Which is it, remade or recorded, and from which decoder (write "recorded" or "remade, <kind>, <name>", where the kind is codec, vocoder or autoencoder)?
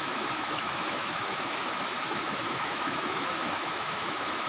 remade, autoencoder, DAC-VAE